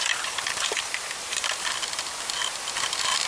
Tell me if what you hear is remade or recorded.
recorded